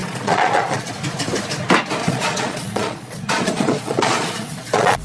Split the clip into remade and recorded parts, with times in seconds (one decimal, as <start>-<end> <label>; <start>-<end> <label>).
0.0-0.9 remade; 0.9-2.0 recorded; 2.0-5.0 remade